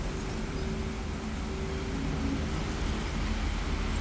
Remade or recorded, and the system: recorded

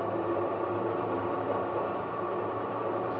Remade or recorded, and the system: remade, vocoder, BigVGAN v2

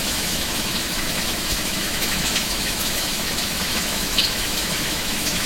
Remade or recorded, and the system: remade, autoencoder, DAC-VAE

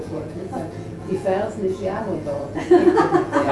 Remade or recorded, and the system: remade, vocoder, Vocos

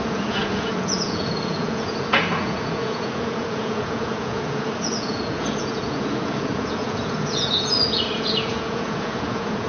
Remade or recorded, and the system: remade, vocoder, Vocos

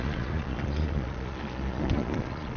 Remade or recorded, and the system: remade, vocoder, Vocos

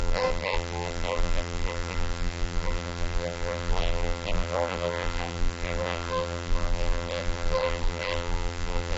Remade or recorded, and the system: remade, vocoder, BigVGAN v2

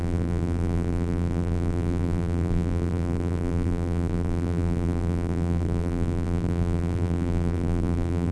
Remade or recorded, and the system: remade, vocoder, BigVGAN v2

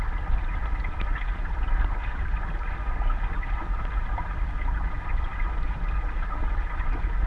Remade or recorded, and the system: recorded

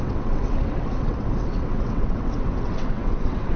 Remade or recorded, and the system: remade, vocoder, WaveNeXt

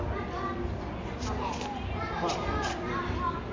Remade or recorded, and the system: recorded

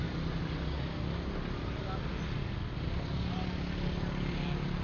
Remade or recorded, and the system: recorded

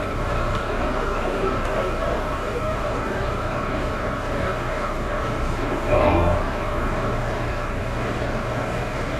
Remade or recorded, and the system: remade, codec, DAC